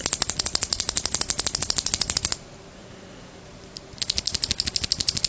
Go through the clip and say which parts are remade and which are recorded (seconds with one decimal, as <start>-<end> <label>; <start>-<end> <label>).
0.0-5.3 recorded